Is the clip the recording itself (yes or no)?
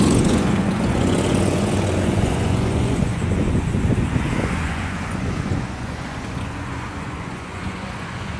no